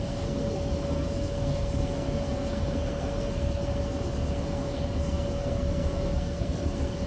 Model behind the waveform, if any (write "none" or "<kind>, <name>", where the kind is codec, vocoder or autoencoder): codec, SNAC